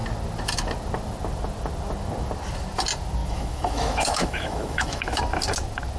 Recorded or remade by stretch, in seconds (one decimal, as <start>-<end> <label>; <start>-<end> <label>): 0.0-3.2 recorded; 3.2-5.2 remade; 5.2-6.0 recorded